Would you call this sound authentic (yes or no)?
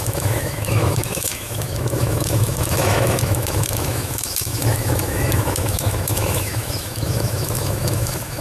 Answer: no